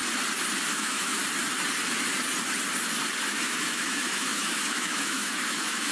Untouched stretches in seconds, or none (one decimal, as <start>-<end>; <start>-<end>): 0.0-0.7; 1.2-3.3